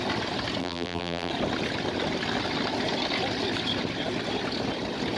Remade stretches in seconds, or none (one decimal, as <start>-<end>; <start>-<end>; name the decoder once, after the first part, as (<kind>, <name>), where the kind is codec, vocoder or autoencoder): 0.6-1.3 (vocoder, BigVGAN v2)